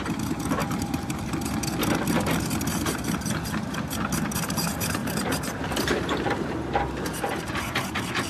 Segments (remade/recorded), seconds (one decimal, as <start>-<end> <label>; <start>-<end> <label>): 0.0-0.6 recorded; 0.6-1.2 remade; 1.2-5.0 recorded; 5.0-6.8 remade; 6.8-8.3 recorded